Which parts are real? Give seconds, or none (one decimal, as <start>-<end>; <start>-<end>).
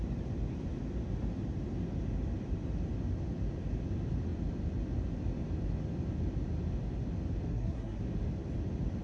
0.0-7.5; 8.0-9.0